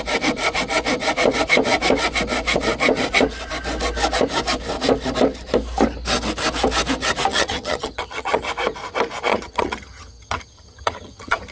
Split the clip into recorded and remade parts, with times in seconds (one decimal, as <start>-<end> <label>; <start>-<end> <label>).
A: 0.0-7.3 recorded; 7.3-8.5 remade; 8.5-9.3 recorded; 9.3-11.5 remade